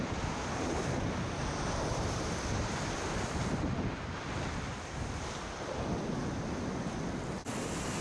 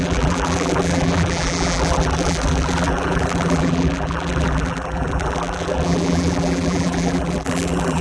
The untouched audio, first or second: first